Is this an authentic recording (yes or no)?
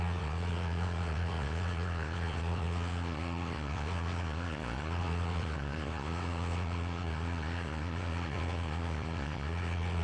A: no